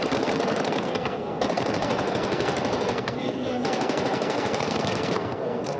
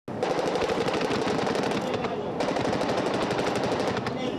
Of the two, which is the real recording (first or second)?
second